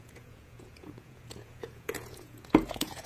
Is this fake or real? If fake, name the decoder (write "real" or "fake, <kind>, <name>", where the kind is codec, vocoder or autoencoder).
fake, vocoder, Vocos